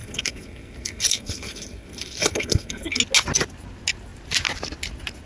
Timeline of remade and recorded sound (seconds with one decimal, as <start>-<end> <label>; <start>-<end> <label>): 0.0-3.0 remade; 3.0-5.3 recorded